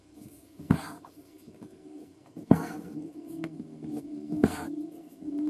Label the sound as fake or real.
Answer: fake